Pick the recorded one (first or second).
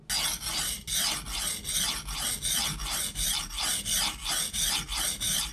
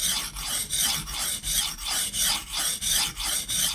first